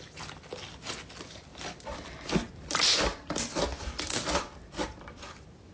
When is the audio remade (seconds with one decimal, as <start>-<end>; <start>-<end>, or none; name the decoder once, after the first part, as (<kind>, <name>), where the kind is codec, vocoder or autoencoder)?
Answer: none